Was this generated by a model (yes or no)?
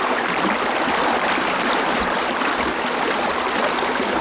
no